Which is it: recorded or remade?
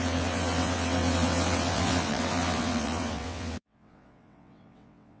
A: remade